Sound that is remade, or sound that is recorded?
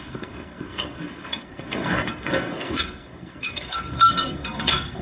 remade